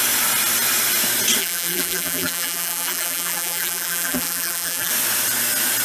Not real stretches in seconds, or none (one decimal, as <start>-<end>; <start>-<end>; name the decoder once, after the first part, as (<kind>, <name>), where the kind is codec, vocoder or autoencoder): 1.4-4.9 (vocoder, BigVGAN v2)